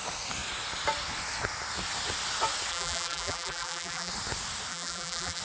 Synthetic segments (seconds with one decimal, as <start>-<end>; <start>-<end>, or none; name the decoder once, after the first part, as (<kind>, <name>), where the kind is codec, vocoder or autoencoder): 2.7-4.1 (vocoder, BigVGAN v2); 4.7-5.4